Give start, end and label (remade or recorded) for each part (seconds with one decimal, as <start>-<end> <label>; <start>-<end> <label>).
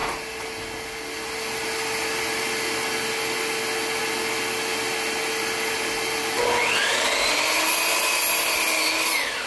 0.0-9.5 recorded